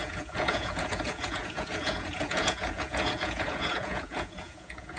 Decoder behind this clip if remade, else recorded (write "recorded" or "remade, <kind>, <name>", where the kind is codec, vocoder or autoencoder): remade, vocoder, Vocos